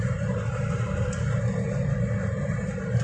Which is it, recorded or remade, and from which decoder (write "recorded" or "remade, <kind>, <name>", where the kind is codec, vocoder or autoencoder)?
recorded